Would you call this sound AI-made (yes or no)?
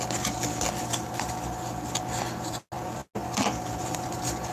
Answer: no